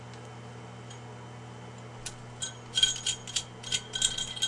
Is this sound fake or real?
real